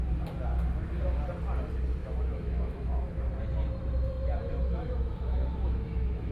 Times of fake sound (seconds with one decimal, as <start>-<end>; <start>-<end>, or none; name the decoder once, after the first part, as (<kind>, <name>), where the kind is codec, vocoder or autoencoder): 2.0-3.3 (autoencoder, DAC-VAE); 4.4-6.3